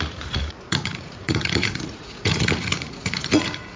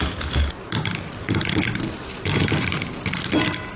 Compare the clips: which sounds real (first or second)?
second